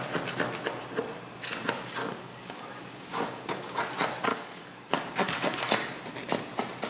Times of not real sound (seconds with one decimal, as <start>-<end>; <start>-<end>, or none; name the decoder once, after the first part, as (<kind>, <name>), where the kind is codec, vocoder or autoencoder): 2.0-3.8 (codec, DAC); 4.3-4.9